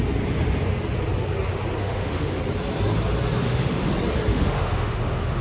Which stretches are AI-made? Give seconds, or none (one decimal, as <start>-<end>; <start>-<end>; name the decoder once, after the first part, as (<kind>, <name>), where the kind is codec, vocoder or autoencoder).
1.8-2.4 (autoencoder, DAC-VAE); 3.4-3.9; 4.3-5.4